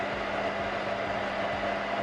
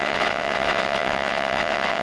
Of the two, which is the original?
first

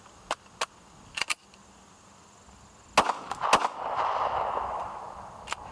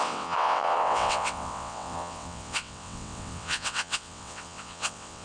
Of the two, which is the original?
first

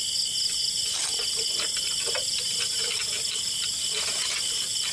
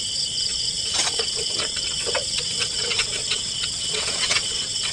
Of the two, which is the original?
first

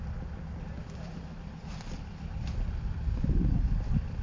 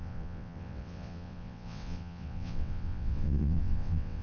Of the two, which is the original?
first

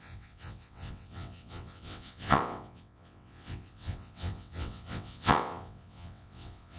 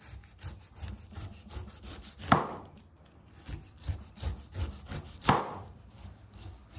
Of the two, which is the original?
second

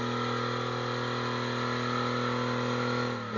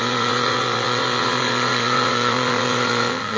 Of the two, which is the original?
first